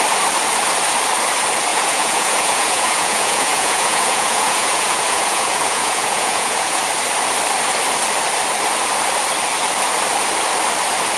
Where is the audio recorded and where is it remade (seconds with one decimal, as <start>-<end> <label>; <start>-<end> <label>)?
0.0-1.7 recorded; 1.7-6.8 remade; 6.8-11.2 recorded